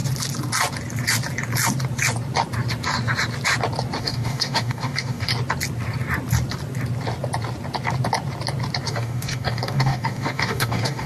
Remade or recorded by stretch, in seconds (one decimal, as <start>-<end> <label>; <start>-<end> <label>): 0.0-4.0 recorded; 4.0-5.3 remade; 5.3-8.9 recorded; 8.9-11.1 remade